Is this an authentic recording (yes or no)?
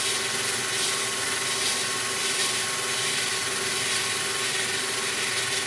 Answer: yes